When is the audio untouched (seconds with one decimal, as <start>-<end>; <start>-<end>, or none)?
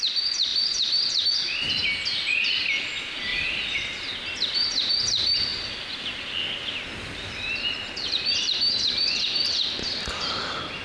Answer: 0.0-0.5; 1.2-3.3; 4.1-5.5; 6.4-10.8